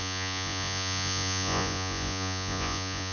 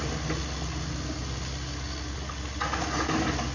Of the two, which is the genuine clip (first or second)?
second